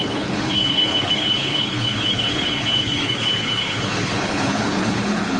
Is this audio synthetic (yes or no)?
yes